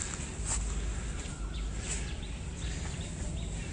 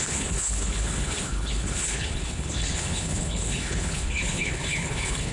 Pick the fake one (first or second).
second